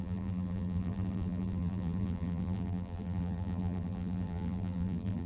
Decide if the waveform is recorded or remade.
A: remade